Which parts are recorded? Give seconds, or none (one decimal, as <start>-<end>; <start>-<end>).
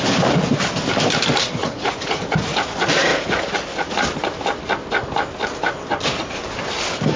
0.0-1.6; 2.7-7.2